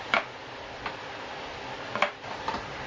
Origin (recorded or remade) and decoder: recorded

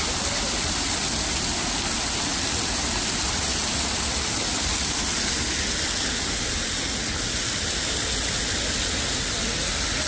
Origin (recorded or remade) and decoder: recorded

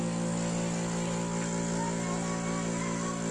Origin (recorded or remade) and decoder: recorded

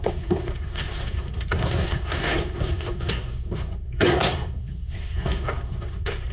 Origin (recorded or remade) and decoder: remade, codec, SNAC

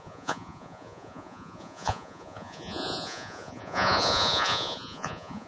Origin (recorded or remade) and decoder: remade, vocoder, Vocos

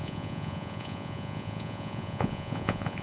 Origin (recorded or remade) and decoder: remade, vocoder, Vocos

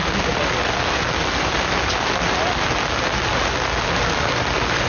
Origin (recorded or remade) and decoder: recorded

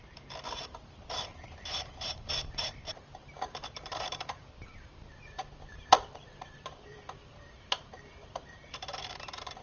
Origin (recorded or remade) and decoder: remade, vocoder, BigVGAN v2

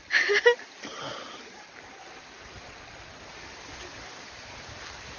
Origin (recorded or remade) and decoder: recorded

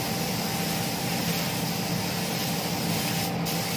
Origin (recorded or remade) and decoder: recorded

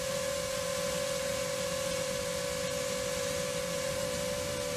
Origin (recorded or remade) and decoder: recorded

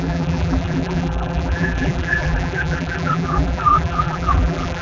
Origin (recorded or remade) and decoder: remade, vocoder, BigVGAN v2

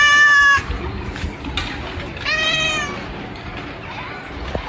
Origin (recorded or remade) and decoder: recorded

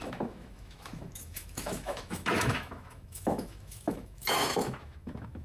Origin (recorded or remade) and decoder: remade, autoencoder, DAC-VAE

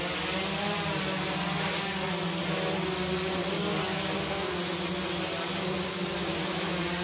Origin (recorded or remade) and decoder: recorded